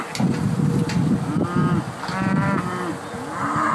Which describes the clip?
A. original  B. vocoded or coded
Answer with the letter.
A